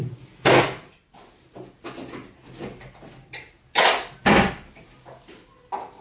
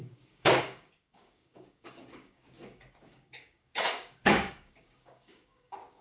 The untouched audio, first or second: first